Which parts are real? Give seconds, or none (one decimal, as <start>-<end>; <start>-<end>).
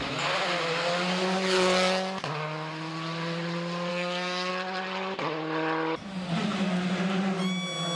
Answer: 0.0-3.9; 4.5-7.9